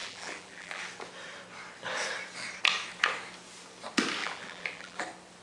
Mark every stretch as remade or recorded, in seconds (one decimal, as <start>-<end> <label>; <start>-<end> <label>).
0.0-0.8 remade; 0.8-4.2 recorded; 4.2-5.0 remade; 5.0-5.4 recorded